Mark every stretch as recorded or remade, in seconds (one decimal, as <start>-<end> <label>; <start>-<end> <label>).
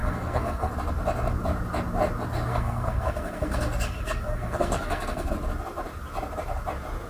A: 0.0-0.7 remade; 0.7-2.5 recorded; 2.5-5.3 remade; 5.3-7.1 recorded